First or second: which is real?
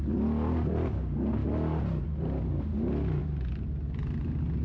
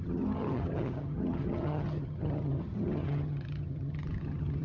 first